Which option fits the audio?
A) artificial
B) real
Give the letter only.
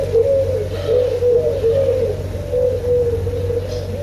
B